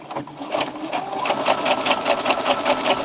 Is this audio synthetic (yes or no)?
no